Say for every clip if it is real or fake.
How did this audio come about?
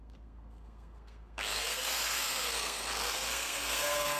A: fake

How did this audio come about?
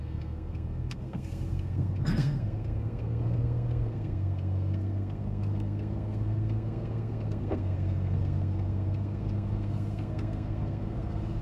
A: fake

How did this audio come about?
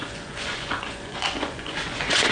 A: fake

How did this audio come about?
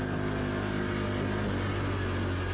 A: real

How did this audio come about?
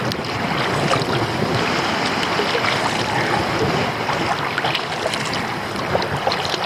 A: real